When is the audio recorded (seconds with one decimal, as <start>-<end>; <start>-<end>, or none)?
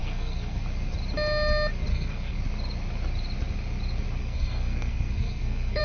0.6-1.9; 2.4-4.2